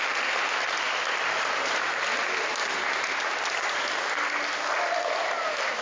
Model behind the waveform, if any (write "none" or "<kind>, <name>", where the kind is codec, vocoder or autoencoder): none